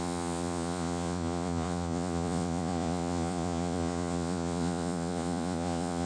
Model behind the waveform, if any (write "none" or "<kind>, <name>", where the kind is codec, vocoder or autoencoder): vocoder, Vocos